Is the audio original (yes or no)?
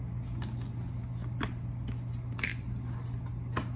yes